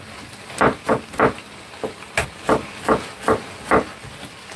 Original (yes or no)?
yes